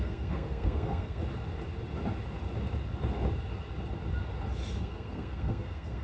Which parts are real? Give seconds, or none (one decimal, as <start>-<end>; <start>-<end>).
1.2-4.8